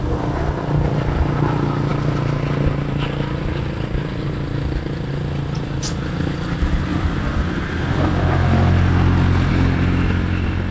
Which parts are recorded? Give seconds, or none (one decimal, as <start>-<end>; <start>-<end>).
0.0-10.7